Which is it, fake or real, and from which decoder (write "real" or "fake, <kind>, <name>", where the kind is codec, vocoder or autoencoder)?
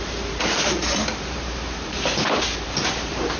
fake, vocoder, BigVGAN v2